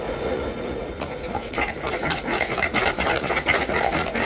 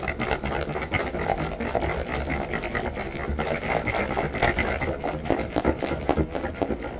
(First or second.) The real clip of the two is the second